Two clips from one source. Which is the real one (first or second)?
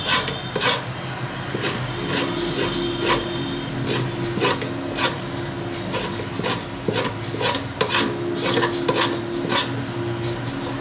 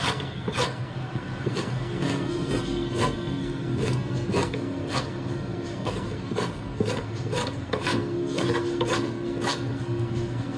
first